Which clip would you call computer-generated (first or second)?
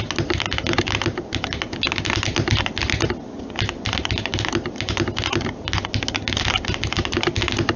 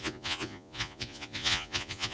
second